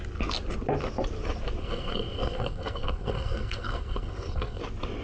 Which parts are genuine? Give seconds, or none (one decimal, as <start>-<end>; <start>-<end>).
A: 0.0-1.6; 4.6-5.0